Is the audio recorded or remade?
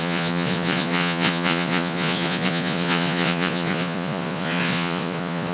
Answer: remade